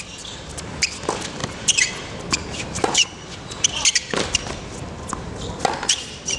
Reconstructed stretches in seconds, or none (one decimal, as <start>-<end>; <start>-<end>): 1.4-1.9